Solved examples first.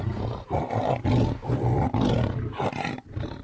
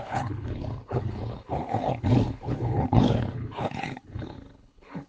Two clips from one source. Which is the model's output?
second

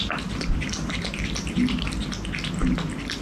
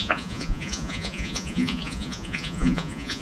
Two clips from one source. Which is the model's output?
second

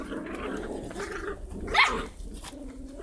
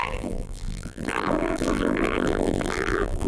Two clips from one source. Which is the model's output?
second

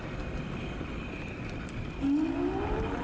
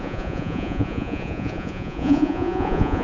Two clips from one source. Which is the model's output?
second